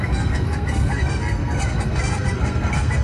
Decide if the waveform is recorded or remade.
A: remade